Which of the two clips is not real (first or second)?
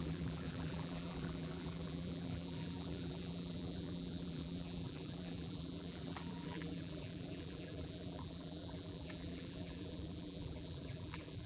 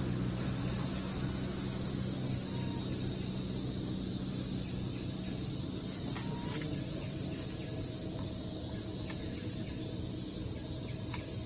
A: first